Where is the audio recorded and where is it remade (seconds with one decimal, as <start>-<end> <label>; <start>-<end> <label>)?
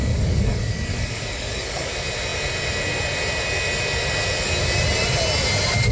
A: 0.0-1.9 remade; 1.9-5.9 recorded